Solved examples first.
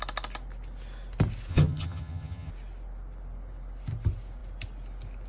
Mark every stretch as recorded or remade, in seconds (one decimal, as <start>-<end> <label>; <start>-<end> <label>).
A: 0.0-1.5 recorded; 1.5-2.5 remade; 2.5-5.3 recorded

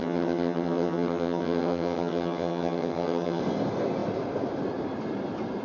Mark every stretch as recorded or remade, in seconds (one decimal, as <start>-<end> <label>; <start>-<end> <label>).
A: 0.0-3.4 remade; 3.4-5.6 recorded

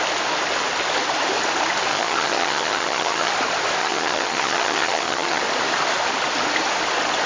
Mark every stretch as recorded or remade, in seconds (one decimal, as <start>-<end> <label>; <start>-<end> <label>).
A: 0.0-1.9 recorded; 1.9-3.3 remade; 3.3-3.8 recorded; 3.8-5.4 remade; 5.4-7.3 recorded

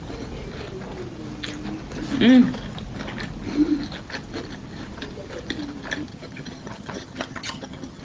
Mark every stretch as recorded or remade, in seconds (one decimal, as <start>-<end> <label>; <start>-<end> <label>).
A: 0.0-6.1 recorded; 6.1-8.0 remade